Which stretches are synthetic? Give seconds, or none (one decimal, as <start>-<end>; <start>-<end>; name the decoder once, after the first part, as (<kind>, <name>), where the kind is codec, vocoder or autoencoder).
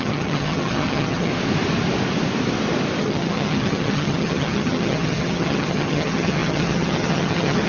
0.0-1.3 (vocoder, HiFi-GAN); 3.0-7.7